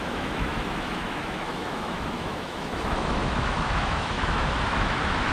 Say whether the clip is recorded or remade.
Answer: remade